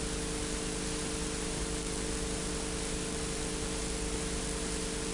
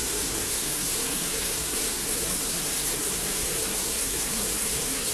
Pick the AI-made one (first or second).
second